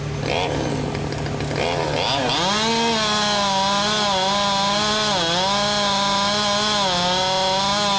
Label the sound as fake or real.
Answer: real